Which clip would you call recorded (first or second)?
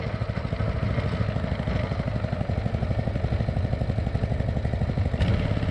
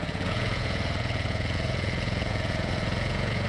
first